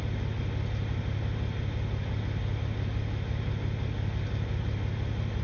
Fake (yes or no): no